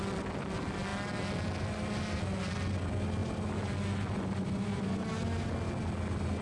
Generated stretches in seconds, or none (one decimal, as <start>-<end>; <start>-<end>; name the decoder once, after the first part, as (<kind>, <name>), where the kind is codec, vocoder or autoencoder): none